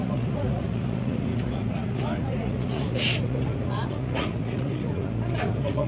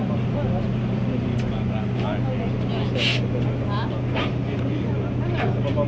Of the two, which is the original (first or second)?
second